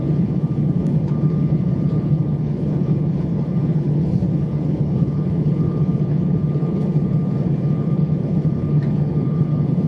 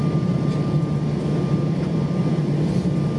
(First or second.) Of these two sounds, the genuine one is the second